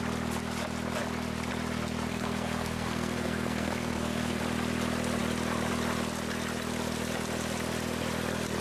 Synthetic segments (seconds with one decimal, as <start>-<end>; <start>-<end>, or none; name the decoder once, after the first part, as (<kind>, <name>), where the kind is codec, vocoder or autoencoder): 2.1-4.4 (codec, SNAC)